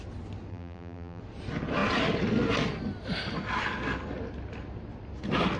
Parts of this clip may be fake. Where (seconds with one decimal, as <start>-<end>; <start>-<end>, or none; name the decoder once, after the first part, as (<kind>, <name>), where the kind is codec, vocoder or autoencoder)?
0.5-1.2 (vocoder, BigVGAN v2)